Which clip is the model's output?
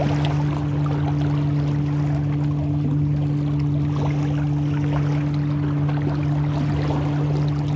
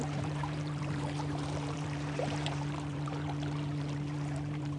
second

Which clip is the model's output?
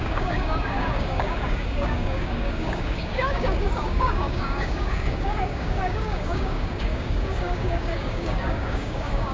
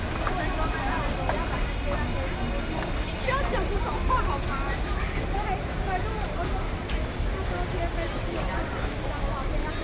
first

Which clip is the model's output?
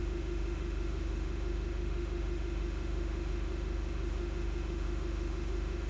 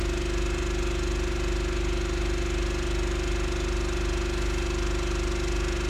first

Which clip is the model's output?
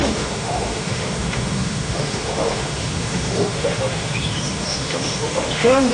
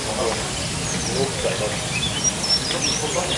first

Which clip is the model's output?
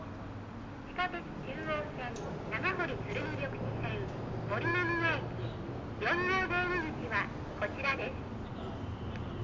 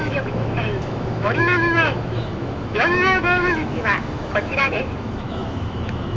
second